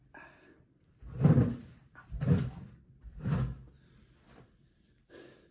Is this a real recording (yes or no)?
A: no